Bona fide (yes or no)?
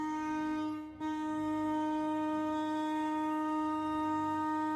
no